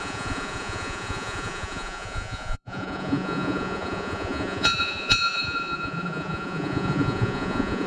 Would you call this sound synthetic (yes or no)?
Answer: yes